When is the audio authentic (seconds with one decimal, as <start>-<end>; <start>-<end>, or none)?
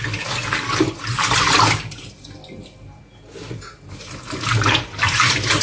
0.0-5.6